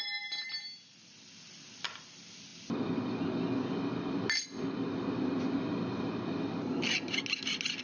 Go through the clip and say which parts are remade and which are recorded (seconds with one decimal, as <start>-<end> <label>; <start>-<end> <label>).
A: 0.0-7.8 recorded